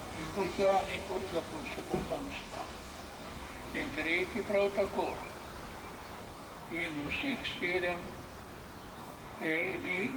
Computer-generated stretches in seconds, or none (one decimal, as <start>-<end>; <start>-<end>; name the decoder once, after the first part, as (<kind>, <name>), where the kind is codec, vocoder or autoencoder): 0.0-4.0 (codec, DAC); 6.2-7.4; 9.0-10.2